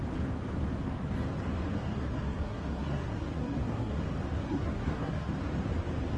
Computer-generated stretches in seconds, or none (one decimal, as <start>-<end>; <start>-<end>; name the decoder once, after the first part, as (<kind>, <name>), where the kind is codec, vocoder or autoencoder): 1.7-4.0 (codec, SNAC); 4.4-5.3